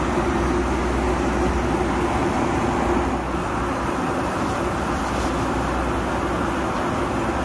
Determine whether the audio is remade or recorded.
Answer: recorded